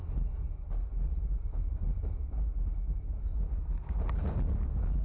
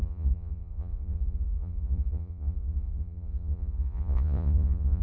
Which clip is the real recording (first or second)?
first